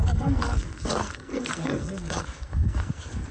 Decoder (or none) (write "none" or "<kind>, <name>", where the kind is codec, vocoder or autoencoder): codec, SNAC